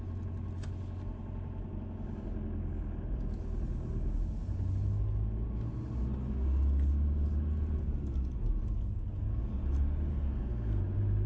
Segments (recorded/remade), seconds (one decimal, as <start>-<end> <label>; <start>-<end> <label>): 0.0-10.1 recorded; 10.1-10.8 remade; 10.8-11.3 recorded